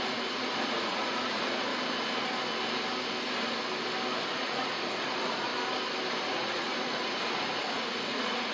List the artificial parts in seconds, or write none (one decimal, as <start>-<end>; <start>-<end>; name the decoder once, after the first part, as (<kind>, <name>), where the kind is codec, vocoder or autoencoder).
0.0-1.7 (vocoder, Vocos); 4.3-5.5; 6.2-8.5